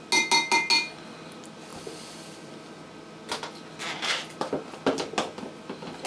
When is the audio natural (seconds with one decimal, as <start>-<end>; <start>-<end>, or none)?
0.0-6.1